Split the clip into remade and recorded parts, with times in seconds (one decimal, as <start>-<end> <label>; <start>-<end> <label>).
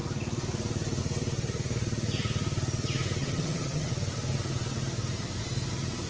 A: 0.0-3.2 recorded; 3.2-3.9 remade; 3.9-6.1 recorded